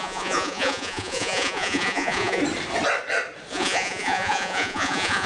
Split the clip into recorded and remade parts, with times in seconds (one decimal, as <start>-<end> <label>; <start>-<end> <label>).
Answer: 0.0-2.4 remade; 2.4-3.5 recorded; 3.5-5.3 remade